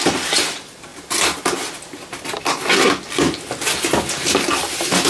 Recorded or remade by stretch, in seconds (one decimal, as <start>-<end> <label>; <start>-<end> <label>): 0.0-5.1 recorded

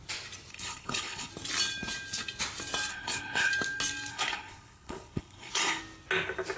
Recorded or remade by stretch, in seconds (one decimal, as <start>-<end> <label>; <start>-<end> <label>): 0.0-0.5 recorded; 0.5-1.3 remade; 1.3-2.9 recorded; 2.9-3.5 remade; 3.5-4.1 recorded; 4.1-5.8 remade; 5.8-6.6 recorded